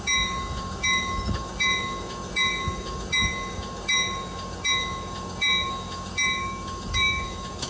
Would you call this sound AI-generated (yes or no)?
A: yes